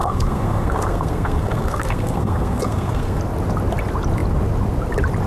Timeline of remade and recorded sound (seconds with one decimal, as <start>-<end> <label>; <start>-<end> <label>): 0.0-3.2 remade; 3.2-5.3 recorded